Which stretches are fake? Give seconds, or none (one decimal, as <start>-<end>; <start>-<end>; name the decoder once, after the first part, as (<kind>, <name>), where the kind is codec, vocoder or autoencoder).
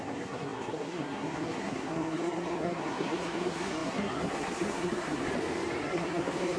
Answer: 0.0-5.3 (codec, SNAC); 5.8-6.6